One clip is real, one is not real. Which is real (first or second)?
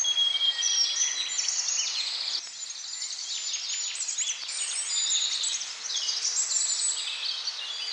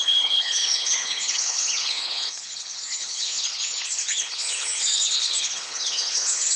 first